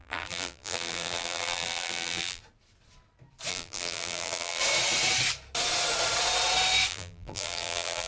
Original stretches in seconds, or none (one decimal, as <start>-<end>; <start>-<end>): 2.4-3.5; 4.6-6.9